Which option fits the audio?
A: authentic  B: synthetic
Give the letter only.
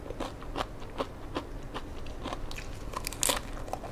A